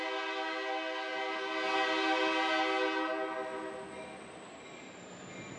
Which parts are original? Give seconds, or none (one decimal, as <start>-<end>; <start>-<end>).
0.0-5.6